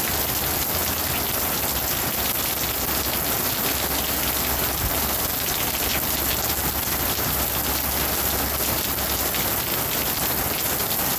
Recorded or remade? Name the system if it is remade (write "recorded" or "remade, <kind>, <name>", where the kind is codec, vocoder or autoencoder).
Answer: recorded